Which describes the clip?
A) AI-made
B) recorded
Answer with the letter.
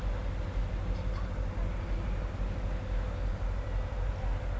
B